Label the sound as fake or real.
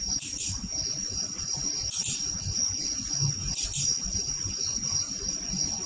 real